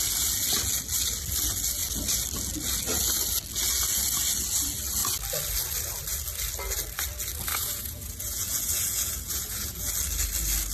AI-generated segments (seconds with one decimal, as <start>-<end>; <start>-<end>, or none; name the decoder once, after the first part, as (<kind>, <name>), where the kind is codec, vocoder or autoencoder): 7.5-9.9 (vocoder, Vocos)